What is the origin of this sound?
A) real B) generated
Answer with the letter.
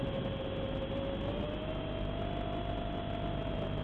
A